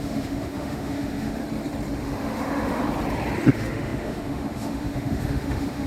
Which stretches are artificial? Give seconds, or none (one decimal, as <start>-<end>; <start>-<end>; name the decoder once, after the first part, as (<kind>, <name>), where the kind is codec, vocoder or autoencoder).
0.0-1.4 (autoencoder, DAC-VAE); 2.0-2.8; 3.5-5.9